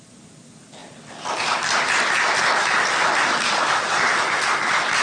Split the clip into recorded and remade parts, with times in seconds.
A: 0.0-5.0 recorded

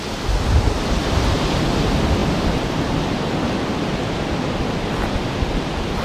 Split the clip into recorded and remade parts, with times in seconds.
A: 0.0-6.0 recorded